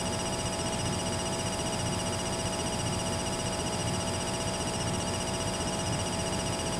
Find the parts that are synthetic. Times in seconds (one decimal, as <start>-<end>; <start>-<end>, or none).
none